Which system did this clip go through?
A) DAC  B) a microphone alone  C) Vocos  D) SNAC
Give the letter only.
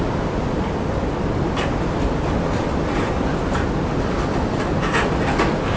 B